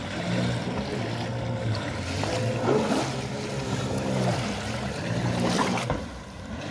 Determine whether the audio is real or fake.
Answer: real